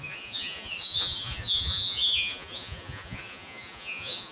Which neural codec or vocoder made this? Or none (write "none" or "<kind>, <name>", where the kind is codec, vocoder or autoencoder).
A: vocoder, Vocos